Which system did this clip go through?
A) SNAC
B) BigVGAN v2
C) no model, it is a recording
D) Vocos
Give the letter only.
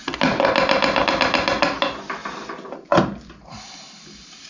C